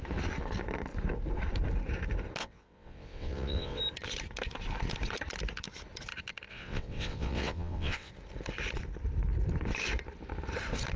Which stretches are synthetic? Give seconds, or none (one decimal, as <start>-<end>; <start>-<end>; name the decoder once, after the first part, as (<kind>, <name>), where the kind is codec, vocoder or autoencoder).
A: 2.4-3.8 (vocoder, WaveNeXt); 6.5-8.1